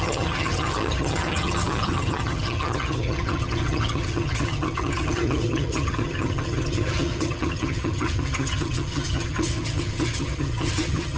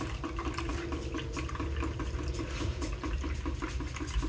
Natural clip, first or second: second